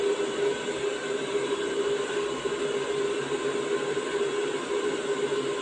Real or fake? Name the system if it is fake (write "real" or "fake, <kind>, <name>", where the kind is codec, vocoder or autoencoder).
real